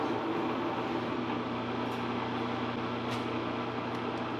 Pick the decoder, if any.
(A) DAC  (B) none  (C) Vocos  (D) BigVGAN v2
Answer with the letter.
B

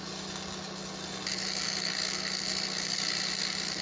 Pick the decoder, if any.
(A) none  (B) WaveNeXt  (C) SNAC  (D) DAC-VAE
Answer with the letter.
A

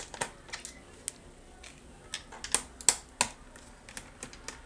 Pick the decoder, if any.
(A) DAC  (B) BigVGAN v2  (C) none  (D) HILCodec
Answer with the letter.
C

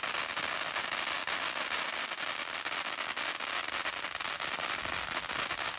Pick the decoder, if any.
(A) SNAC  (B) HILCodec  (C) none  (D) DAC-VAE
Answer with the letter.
C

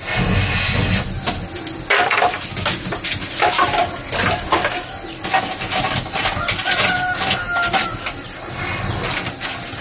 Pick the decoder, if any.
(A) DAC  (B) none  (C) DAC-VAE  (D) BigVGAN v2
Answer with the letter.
B